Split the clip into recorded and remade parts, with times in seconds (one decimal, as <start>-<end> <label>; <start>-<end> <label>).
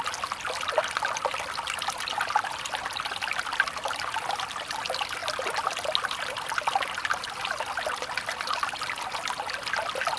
0.0-10.2 recorded